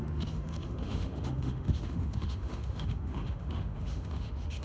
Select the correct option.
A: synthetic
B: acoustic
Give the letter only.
A